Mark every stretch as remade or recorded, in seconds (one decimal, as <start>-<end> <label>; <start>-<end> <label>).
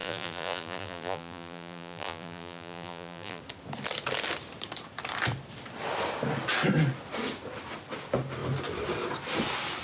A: 0.0-3.4 remade; 3.4-9.8 recorded